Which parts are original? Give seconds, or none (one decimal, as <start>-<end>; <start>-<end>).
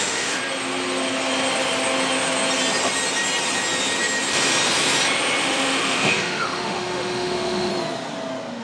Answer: 0.4-5.4; 7.7-8.6